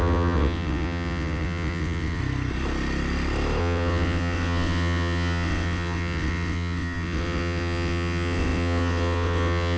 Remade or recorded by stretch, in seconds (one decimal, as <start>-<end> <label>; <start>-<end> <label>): 0.0-2.2 remade; 2.2-3.6 recorded; 3.6-9.8 remade